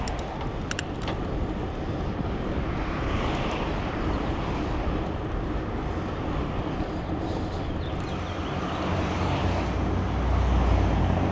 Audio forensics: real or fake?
real